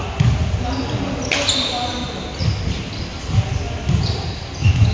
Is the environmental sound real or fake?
real